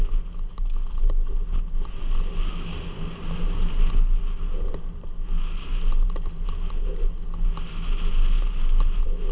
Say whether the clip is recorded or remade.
recorded